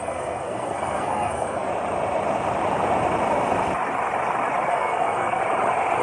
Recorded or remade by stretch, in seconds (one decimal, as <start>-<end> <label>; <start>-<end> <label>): 0.0-1.7 remade; 1.7-4.7 recorded; 4.7-5.4 remade; 5.4-6.0 recorded